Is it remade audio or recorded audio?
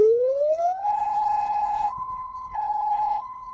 remade